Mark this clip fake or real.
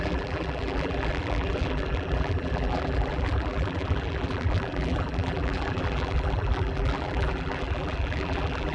fake